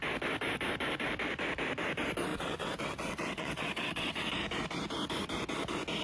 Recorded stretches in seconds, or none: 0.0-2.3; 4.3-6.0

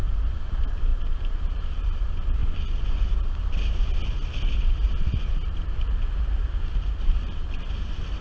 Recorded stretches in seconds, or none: 0.0-0.9; 2.0-8.2

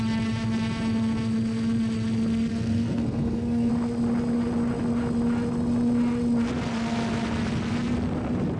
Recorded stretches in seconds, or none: 0.0-2.5; 3.7-8.6

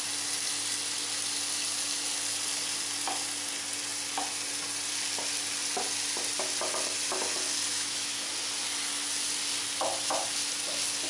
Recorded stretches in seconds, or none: 0.0-7.7; 8.3-11.1

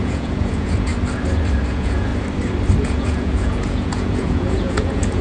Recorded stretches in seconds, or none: 0.9-1.7; 2.1-2.8

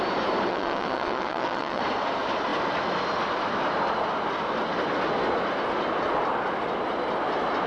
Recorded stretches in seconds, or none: 0.0-0.5; 1.8-7.7

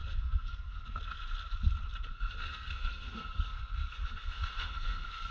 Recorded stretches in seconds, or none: 1.0-2.1

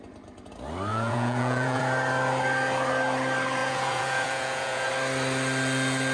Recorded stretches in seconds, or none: 0.0-0.9; 1.8-3.6; 4.9-6.1